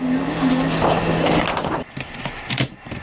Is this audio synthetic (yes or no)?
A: no